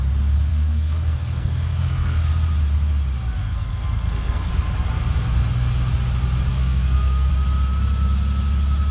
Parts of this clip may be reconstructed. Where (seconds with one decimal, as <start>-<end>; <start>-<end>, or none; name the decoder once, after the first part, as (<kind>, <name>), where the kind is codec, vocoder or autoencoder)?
0.5-2.3 (codec, SNAC); 3.4-4.5; 6.5-7.3